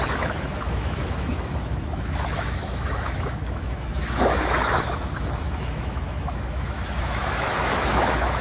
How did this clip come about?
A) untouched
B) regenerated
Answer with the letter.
B